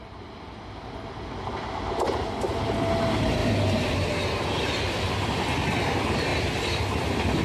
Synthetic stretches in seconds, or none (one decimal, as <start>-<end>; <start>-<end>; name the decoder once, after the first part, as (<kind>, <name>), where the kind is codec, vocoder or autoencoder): none